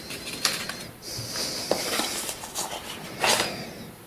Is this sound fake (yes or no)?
no